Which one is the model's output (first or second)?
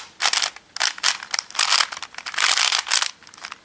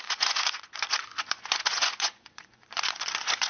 second